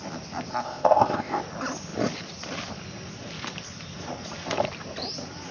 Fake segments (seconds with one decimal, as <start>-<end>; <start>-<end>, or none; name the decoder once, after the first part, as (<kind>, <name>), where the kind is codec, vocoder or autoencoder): 0.5-1.4 (codec, ZipCodec)